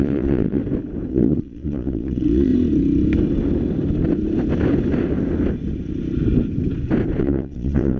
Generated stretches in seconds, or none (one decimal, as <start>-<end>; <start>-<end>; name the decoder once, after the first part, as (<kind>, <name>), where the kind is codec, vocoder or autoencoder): 0.0-0.6 (vocoder, Vocos); 1.1-2.5; 7.2-8.0